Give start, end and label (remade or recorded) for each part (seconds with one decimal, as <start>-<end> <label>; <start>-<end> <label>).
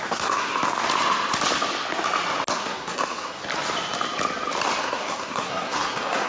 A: 0.0-0.5 remade; 0.5-2.5 recorded; 2.5-3.4 remade; 3.4-4.8 recorded; 4.8-6.3 remade